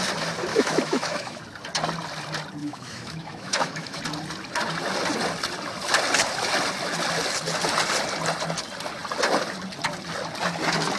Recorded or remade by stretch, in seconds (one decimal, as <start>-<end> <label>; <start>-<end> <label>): 0.0-0.5 recorded; 0.5-1.4 remade; 1.4-2.6 recorded; 2.6-4.0 remade; 4.0-11.0 recorded